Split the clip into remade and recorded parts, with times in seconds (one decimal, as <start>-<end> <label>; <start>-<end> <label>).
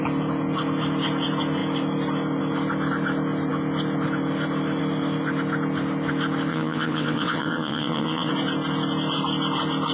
0.0-6.5 recorded; 6.5-8.3 remade; 8.3-9.9 recorded